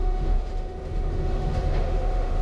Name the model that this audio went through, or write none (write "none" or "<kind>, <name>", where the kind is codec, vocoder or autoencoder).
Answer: autoencoder, DAC-VAE